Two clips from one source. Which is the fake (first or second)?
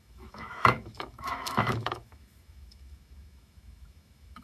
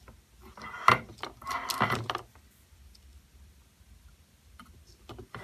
first